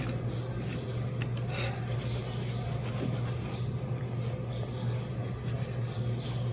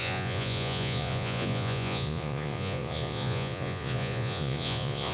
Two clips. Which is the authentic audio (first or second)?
first